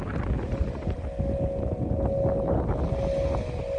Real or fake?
real